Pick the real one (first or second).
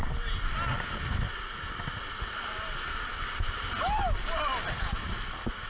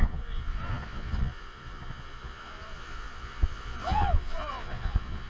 first